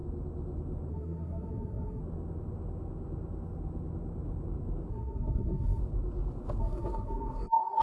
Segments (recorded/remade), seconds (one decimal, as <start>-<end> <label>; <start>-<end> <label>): 0.0-0.9 recorded; 0.9-2.0 remade; 2.0-4.9 recorded; 4.9-5.8 remade; 5.8-6.6 recorded; 6.6-7.8 remade